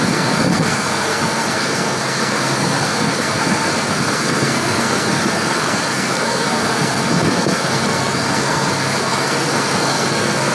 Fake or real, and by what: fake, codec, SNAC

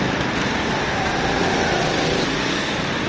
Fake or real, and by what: real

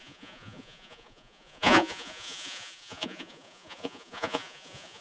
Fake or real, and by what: fake, vocoder, Vocos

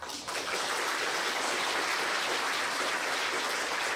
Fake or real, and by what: fake, vocoder, BigVGAN v2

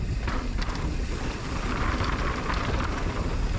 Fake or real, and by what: real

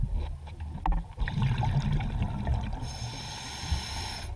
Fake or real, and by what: real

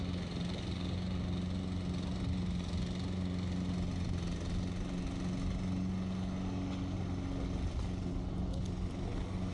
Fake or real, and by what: real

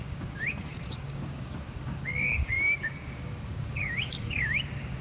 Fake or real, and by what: fake, codec, DAC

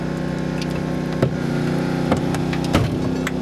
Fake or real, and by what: real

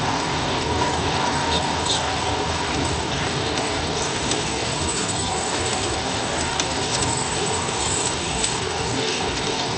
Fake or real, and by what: fake, codec, DAC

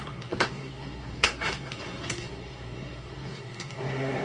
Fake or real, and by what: fake, codec, SNAC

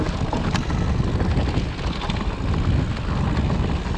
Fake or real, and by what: real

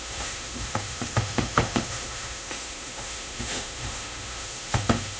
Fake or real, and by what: fake, autoencoder, DAC-VAE